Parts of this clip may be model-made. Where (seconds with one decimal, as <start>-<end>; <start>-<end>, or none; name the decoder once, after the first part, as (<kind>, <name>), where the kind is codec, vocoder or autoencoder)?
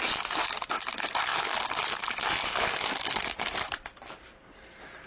none